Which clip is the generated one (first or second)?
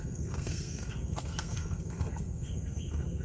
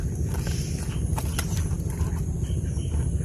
first